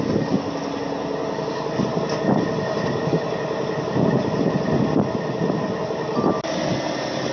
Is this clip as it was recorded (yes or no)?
yes